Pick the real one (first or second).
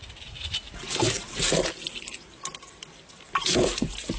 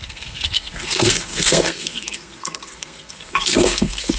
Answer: first